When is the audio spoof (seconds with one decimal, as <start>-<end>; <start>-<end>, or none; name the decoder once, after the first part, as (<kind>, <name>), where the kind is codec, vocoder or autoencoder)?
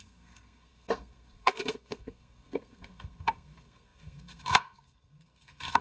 0.0-5.8 (codec, SNAC)